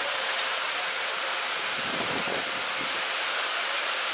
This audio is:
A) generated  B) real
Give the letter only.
B